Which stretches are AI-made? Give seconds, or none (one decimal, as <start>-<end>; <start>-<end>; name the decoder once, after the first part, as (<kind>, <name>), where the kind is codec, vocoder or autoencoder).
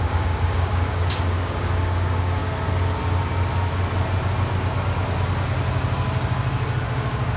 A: 0.0-2.4 (codec, DAC); 6.8-7.4